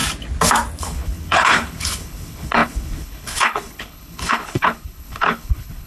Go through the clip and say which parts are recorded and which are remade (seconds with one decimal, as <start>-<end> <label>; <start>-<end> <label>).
0.0-0.8 recorded; 0.8-5.9 remade

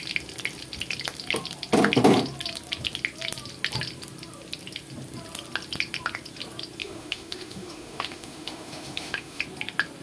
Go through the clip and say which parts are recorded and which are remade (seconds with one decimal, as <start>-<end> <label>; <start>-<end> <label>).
0.0-6.8 recorded; 6.8-9.4 remade; 9.4-10.0 recorded

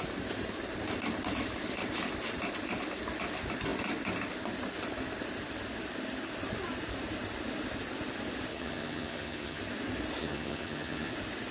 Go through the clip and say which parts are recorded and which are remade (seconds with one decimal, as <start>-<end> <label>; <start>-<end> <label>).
0.0-8.5 recorded; 8.5-9.6 remade; 9.6-10.2 recorded; 10.2-11.1 remade; 11.1-11.5 recorded

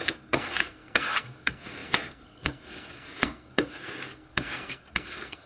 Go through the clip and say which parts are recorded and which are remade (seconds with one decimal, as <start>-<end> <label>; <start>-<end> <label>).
0.0-5.5 remade

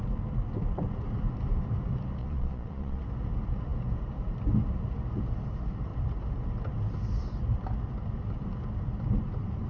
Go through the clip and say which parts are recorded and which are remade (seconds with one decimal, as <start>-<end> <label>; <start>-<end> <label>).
0.0-2.2 recorded; 2.2-3.0 remade; 3.0-9.7 recorded